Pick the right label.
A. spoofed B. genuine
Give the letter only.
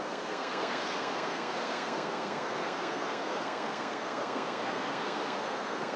A